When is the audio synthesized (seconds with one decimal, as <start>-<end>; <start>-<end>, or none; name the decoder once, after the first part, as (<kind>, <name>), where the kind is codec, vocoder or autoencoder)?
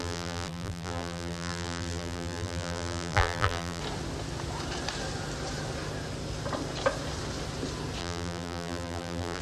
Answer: 0.0-3.8 (vocoder, BigVGAN v2); 8.0-9.4